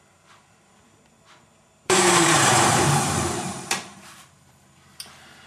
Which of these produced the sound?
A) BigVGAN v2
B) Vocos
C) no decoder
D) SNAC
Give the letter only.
A